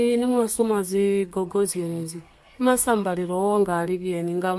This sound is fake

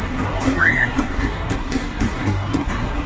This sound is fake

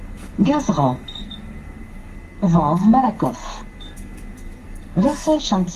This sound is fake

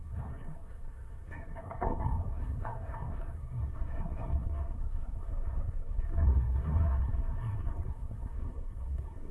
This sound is fake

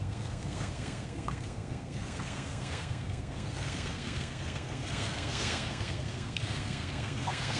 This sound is fake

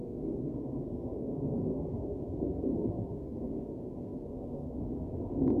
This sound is fake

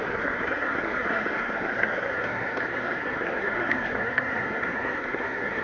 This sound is fake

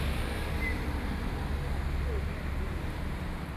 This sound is real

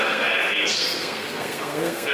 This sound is fake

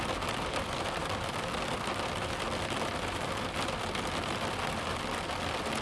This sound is real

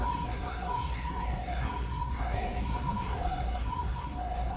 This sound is fake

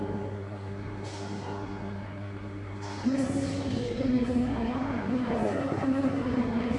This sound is fake